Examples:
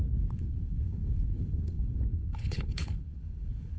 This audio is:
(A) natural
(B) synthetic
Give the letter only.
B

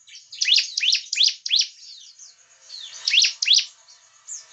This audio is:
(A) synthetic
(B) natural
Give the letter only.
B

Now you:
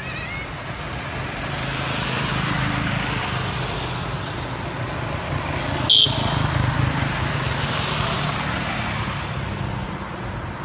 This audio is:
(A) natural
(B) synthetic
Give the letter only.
A